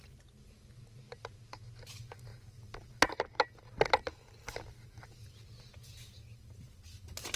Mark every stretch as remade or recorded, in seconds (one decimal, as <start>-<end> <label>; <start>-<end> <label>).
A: 0.0-7.4 recorded

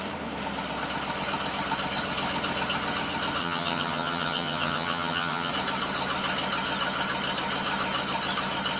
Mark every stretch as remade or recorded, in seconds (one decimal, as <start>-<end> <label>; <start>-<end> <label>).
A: 0.0-3.4 recorded; 3.4-5.5 remade; 5.5-8.8 recorded

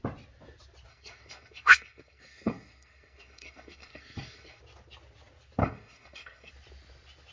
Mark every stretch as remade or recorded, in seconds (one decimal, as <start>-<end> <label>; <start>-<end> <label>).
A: 0.0-0.9 recorded; 0.9-4.6 remade; 4.6-5.6 recorded; 5.6-6.5 remade; 6.5-7.3 recorded

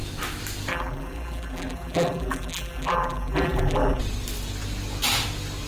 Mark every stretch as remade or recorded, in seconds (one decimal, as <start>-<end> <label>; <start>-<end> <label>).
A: 0.0-0.7 recorded; 0.7-4.0 remade; 4.0-5.7 recorded